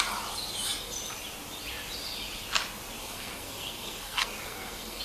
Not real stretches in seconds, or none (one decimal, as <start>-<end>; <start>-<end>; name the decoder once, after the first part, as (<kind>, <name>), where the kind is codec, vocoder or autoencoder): 3.0-5.0 (codec, SNAC)